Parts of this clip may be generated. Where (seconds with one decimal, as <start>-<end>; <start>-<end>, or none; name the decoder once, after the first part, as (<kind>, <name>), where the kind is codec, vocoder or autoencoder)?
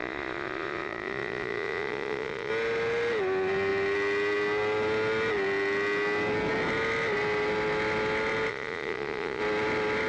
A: 0.0-2.5 (vocoder, Vocos); 8.5-9.4